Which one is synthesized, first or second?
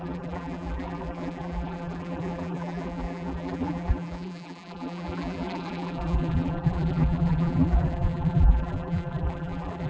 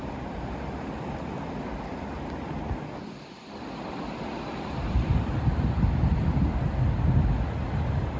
first